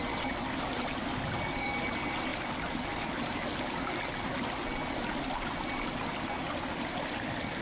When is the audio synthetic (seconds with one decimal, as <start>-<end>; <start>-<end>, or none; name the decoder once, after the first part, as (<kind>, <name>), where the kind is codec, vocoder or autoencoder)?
0.0-2.3 (vocoder, BigVGAN v2); 6.9-7.6